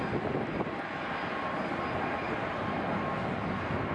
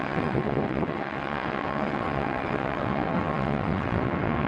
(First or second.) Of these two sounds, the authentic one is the first